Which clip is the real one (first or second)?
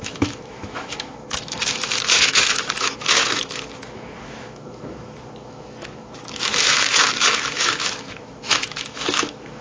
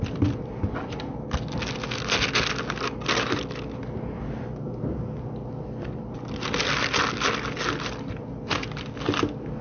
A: second